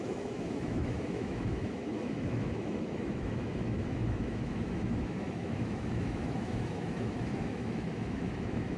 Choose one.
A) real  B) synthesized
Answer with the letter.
B